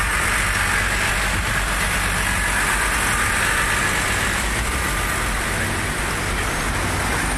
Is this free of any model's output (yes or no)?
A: yes